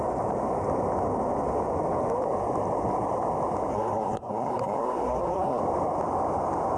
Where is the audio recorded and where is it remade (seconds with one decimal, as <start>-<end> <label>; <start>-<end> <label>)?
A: 0.0-3.7 recorded; 3.7-5.6 remade; 5.6-6.8 recorded